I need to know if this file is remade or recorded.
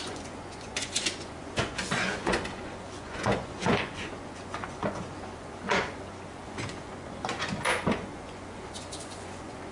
remade